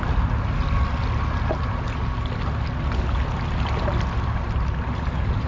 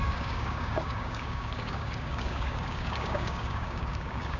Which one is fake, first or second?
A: second